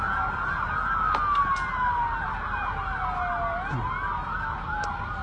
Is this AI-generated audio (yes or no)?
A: no